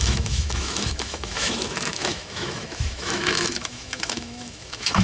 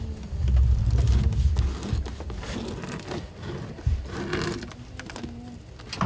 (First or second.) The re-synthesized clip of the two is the first